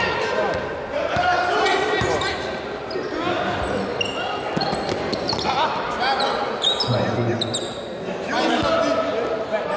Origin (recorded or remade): recorded